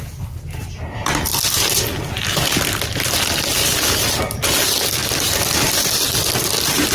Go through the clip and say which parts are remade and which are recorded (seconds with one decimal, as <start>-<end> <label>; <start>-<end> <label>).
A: 0.0-6.9 recorded